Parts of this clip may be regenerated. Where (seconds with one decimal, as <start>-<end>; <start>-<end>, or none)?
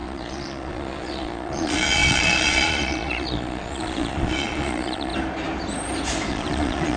0.0-5.1; 6.3-7.0